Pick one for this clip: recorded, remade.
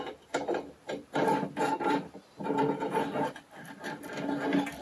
recorded